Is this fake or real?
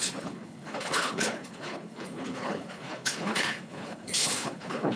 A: fake